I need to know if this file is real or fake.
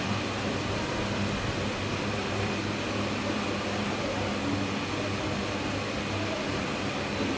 real